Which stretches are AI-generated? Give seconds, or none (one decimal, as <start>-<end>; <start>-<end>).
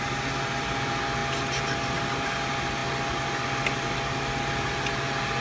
none